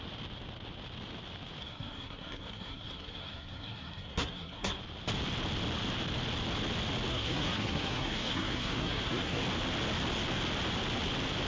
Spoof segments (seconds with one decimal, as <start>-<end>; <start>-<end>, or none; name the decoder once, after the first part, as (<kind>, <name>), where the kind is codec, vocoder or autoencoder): 1.6-4.8 (codec, SNAC); 7.1-9.4